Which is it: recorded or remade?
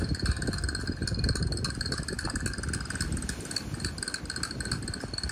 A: recorded